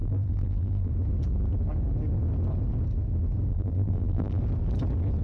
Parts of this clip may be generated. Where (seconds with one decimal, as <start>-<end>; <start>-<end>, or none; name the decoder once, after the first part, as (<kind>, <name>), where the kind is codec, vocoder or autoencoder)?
0.0-0.9 (vocoder, BigVGAN v2); 3.5-4.4